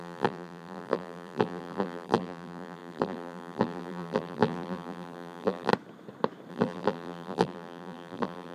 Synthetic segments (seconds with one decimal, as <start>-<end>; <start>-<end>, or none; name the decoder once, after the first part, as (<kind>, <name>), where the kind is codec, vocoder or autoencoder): 0.0-5.7 (vocoder, BigVGAN v2); 6.5-8.5